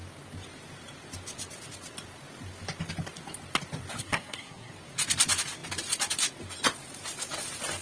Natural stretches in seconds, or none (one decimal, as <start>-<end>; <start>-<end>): 0.0-4.0; 4.7-7.8